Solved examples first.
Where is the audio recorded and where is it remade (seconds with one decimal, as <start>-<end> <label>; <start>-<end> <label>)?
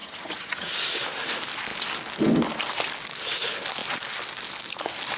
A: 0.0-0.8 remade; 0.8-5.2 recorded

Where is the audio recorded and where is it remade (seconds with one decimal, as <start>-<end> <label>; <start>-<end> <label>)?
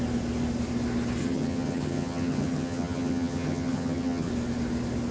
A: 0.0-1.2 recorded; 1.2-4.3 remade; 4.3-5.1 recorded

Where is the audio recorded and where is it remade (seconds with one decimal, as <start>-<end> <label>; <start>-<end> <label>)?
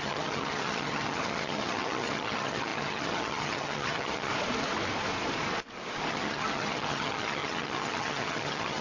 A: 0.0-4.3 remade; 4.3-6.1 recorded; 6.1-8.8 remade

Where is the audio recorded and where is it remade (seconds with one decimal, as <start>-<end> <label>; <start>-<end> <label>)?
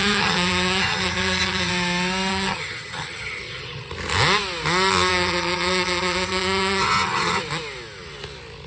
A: 0.0-1.7 remade; 1.7-2.3 recorded; 2.3-3.9 remade; 3.9-5.1 recorded; 5.1-7.4 remade; 7.4-8.7 recorded